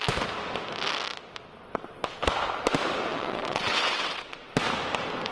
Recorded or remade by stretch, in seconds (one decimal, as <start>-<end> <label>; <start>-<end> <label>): 0.0-3.1 recorded; 3.1-4.5 remade; 4.5-5.3 recorded